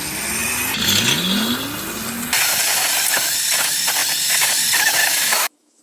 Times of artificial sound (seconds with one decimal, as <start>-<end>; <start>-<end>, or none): 5.0-5.8